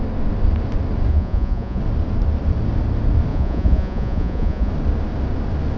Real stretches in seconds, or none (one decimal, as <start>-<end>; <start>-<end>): 0.0-1.1; 1.8-3.3; 4.7-5.8